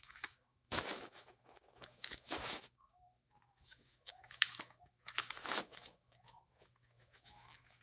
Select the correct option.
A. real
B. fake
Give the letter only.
B